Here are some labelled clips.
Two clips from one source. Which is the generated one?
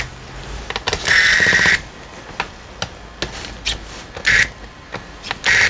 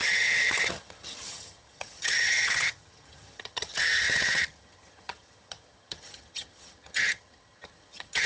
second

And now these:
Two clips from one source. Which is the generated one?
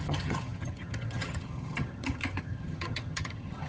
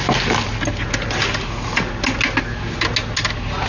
first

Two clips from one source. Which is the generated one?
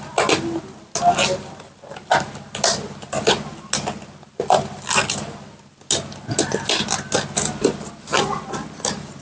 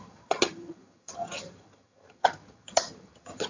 second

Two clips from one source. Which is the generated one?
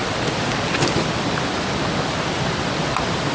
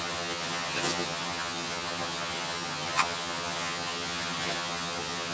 second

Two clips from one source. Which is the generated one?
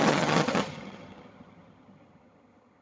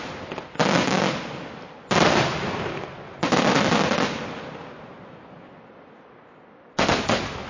first